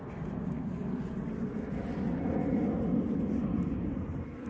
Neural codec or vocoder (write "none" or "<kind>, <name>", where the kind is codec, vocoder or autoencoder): none